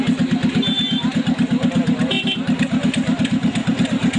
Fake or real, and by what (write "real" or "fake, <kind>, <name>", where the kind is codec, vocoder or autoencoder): real